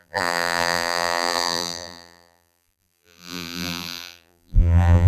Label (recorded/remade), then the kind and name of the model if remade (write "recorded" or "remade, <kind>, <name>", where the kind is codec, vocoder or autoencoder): remade, vocoder, BigVGAN v2